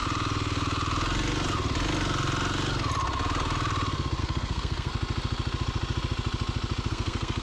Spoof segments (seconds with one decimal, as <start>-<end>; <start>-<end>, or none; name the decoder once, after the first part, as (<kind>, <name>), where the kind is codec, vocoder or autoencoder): 4.2-4.9 (codec, SNAC); 6.9-7.4